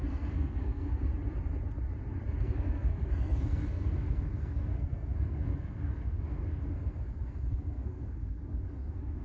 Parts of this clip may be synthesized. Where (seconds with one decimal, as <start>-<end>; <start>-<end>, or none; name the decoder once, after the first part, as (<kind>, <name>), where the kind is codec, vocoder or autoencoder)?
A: 0.0-1.1 (codec, SNAC); 2.4-9.2